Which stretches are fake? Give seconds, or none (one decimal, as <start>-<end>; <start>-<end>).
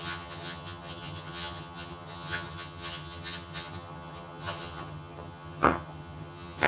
0.0-6.7